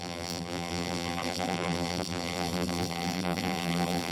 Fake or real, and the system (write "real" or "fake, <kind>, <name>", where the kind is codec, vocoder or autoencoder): fake, vocoder, BigVGAN v2